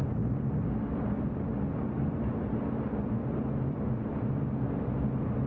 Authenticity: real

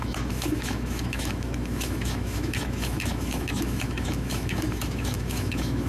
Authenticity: fake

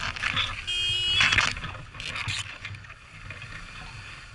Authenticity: real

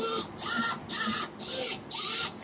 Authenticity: real